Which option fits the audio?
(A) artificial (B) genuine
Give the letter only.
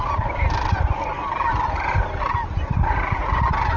B